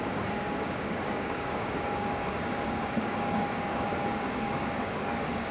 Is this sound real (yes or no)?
no